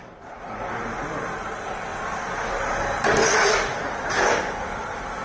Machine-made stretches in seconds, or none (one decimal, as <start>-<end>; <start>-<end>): none